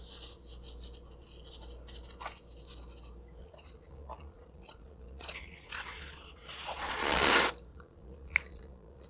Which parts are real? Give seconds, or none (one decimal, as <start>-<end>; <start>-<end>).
0.0-3.4; 7.3-7.7